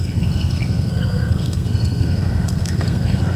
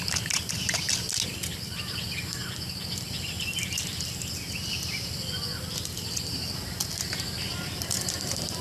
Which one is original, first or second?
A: second